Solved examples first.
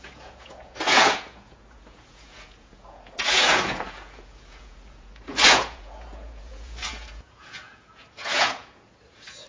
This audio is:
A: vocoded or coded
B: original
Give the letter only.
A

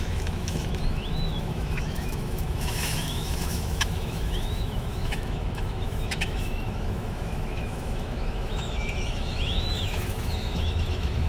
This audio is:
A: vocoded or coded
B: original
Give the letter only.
A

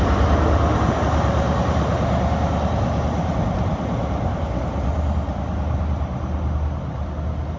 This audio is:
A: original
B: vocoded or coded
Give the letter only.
A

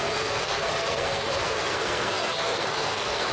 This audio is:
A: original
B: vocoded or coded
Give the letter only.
B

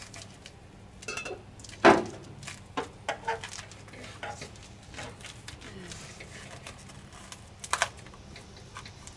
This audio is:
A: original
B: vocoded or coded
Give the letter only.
A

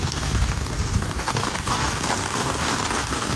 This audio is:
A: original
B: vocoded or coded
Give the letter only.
B